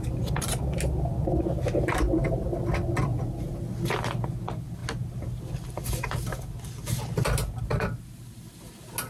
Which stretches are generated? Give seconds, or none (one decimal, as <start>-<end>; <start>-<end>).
none